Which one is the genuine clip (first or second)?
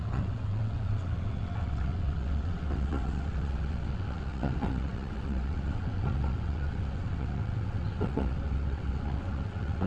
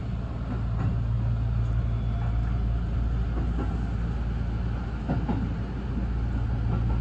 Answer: second